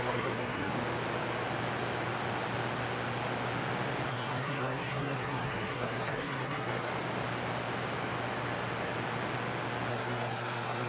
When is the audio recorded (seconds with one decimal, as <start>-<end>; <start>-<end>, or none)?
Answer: 0.7-4.1; 6.9-9.9